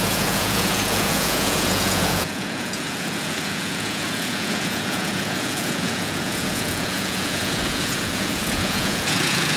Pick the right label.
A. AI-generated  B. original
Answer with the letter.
A